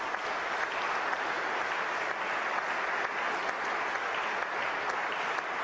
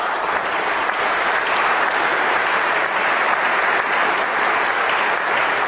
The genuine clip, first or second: first